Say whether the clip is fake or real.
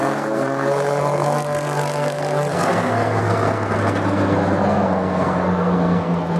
fake